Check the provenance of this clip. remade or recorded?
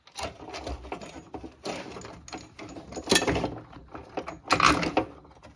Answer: recorded